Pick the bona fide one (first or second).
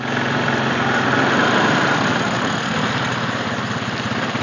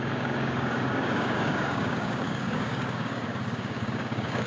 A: first